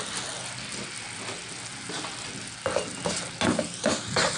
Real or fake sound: real